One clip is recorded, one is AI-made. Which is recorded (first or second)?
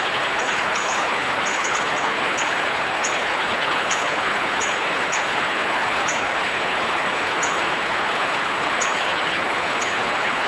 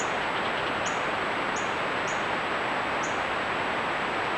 second